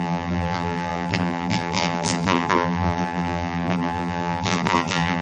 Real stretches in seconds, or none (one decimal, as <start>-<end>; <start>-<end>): none